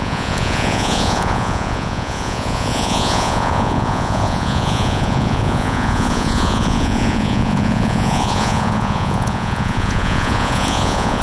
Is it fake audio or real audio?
fake